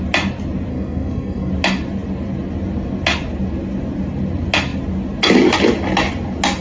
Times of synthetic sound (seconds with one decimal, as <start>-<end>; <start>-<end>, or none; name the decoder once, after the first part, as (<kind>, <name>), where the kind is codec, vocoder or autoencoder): 0.7-1.5 (codec, SNAC)